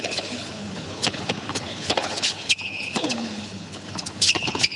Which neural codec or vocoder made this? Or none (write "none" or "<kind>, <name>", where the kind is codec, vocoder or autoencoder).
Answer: codec, HILCodec